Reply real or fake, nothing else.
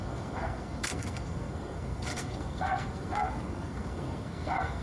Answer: fake